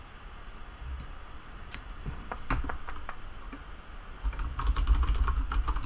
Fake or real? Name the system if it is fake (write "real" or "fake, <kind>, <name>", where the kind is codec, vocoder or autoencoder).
real